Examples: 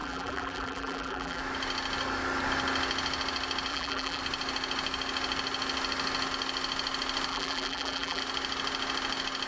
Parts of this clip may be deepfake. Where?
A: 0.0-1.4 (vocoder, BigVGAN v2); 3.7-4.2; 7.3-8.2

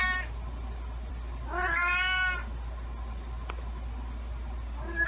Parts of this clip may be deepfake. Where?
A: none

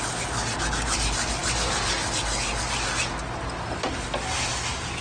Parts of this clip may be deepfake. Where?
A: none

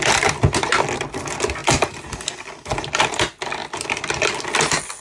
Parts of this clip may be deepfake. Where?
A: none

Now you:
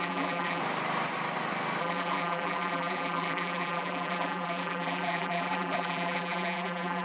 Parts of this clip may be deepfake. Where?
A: 0.0-0.6 (vocoder, BigVGAN v2); 1.8-7.0

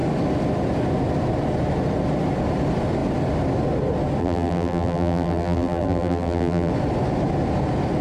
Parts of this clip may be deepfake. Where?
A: 4.2-6.7 (vocoder, BigVGAN v2)